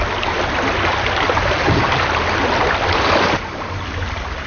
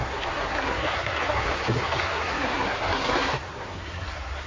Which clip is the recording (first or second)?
first